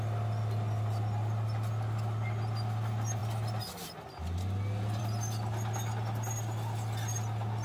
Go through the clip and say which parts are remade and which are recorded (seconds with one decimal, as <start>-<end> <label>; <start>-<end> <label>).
0.0-7.6 recorded